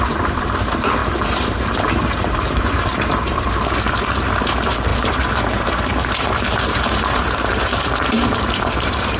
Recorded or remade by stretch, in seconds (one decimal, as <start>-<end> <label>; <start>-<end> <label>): 0.0-9.2 remade